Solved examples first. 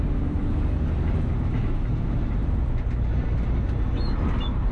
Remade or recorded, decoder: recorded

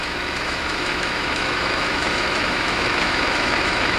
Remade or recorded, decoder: remade, autoencoder, DAC-VAE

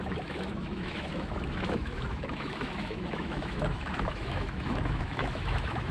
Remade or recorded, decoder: remade, autoencoder, DAC-VAE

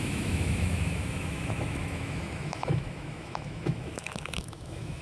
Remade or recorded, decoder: remade, autoencoder, DAC-VAE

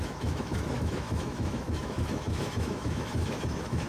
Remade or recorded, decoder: remade, autoencoder, DAC-VAE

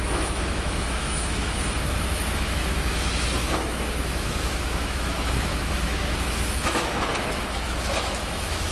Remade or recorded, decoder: remade, autoencoder, DAC-VAE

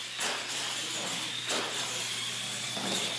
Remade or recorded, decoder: recorded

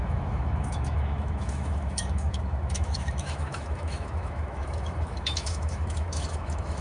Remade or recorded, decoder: remade, autoencoder, DAC-VAE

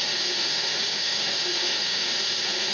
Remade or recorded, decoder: remade, autoencoder, DAC-VAE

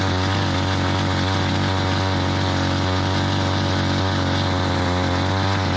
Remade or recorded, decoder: recorded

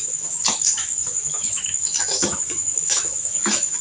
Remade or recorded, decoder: remade, autoencoder, DAC-VAE